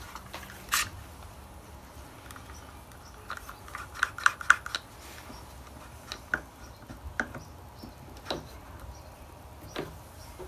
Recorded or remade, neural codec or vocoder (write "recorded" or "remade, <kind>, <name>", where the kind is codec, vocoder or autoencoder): recorded